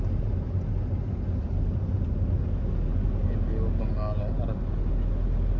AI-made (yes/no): no